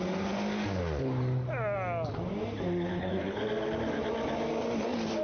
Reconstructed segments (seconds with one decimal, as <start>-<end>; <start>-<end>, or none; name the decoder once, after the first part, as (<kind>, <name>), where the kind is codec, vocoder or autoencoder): 2.9-3.4 (codec, HILCodec)